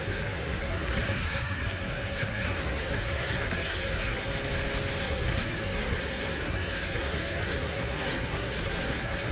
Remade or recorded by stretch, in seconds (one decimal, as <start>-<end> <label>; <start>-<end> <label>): 0.0-4.3 remade; 4.3-5.0 recorded; 5.0-9.3 remade